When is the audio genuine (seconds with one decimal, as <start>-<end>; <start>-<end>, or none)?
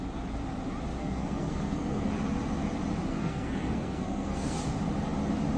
0.0-1.0; 2.1-3.1; 4.6-5.6